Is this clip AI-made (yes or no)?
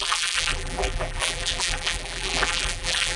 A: yes